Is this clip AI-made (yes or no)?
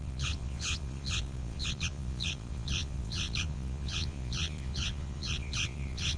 yes